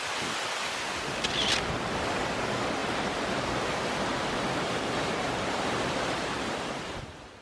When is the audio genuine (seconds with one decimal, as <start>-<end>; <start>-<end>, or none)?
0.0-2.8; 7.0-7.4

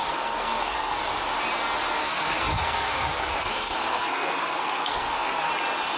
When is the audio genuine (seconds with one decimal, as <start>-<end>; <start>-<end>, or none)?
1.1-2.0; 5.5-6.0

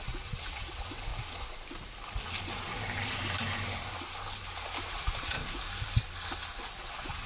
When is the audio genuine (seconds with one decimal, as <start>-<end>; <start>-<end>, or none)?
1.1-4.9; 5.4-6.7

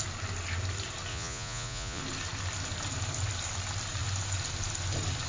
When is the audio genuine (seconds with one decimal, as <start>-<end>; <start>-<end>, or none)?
0.0-1.1; 2.0-5.3

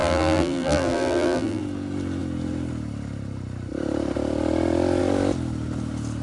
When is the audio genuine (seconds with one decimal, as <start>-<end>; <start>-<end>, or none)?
1.6-6.2

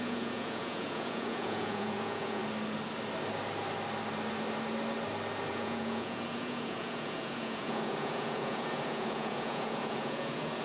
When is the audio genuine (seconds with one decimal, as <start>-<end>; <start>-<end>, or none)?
2.4-5.5